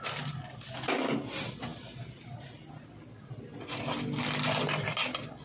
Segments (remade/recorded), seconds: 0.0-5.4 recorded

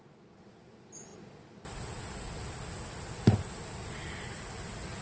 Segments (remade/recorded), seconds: 0.0-5.0 recorded

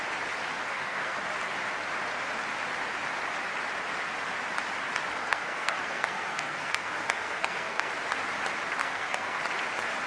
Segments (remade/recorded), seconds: 0.0-0.6 recorded; 0.6-1.2 remade; 1.2-5.2 recorded; 5.2-7.9 remade; 7.9-8.8 recorded; 8.8-9.4 remade; 9.4-10.1 recorded

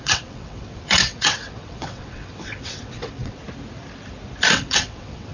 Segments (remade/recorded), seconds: 0.0-3.4 remade; 3.4-4.5 recorded; 4.5-5.3 remade

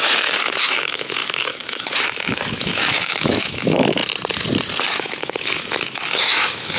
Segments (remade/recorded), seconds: 0.0-4.0 remade; 4.0-5.0 recorded; 5.0-6.8 remade

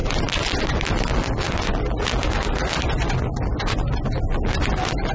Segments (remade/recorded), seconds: 0.0-5.1 recorded

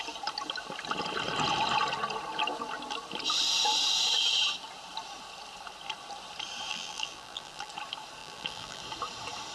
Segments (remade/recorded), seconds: 0.0-6.7 recorded; 6.7-7.7 remade; 7.7-8.2 recorded; 8.2-8.8 remade; 8.8-9.5 recorded